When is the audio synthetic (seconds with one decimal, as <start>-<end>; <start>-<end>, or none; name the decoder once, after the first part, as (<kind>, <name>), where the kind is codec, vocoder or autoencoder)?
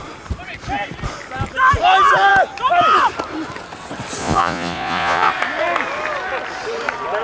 4.2-5.3 (vocoder, Vocos)